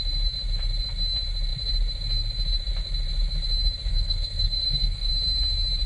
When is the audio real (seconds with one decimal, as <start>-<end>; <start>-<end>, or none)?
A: 0.0-3.9; 5.1-5.9